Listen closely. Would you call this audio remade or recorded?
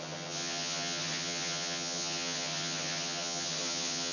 remade